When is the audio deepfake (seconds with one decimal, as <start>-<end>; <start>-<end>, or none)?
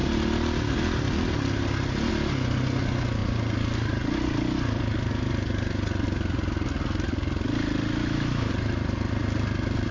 8.0-8.5